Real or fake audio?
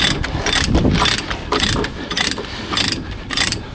real